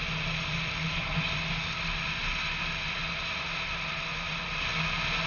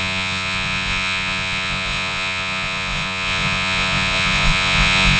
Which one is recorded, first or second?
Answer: first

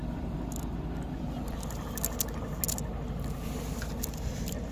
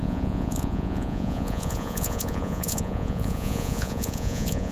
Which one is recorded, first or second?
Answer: first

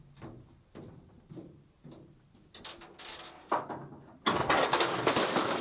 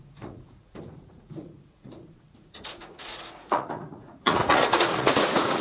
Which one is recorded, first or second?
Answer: first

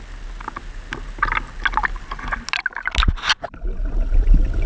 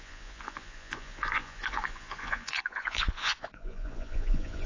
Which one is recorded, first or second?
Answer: first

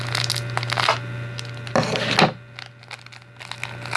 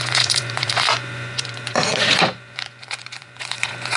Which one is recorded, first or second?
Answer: first